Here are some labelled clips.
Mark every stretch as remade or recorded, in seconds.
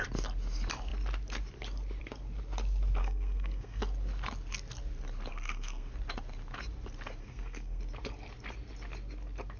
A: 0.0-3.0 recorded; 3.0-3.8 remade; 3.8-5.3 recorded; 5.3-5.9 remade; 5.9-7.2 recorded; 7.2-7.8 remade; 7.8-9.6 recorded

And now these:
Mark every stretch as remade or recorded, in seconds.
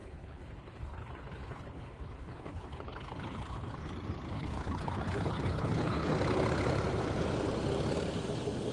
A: 0.0-3.9 remade; 3.9-4.3 recorded; 4.3-6.1 remade; 6.1-8.7 recorded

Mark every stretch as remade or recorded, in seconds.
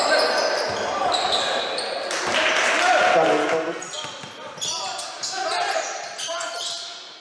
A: 0.0-7.2 recorded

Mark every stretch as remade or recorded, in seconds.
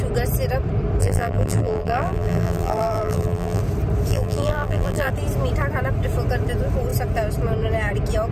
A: 0.0-1.0 recorded; 1.0-3.6 remade; 3.6-4.1 recorded; 4.1-5.1 remade; 5.1-8.3 recorded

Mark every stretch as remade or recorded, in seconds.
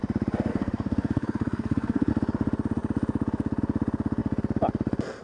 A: 0.0-0.5 recorded; 0.5-2.1 remade; 2.1-5.2 recorded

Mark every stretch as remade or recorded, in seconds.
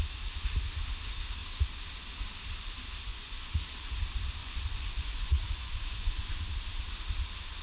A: 0.0-3.1 recorded; 3.1-3.6 remade; 3.6-4.4 recorded; 4.4-6.4 remade; 6.4-7.6 recorded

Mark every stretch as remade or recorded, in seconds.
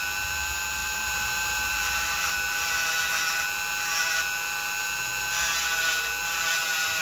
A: 0.0-0.8 recorded; 0.8-2.3 remade; 2.3-7.0 recorded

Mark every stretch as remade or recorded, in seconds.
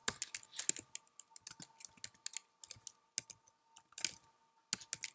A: 0.0-5.1 recorded